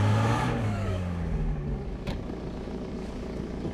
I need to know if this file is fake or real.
fake